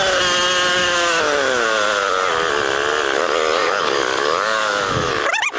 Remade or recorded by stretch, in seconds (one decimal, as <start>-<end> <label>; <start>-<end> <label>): 0.0-0.7 recorded; 0.7-1.2 remade; 1.2-3.6 recorded; 3.6-5.1 remade; 5.1-5.6 recorded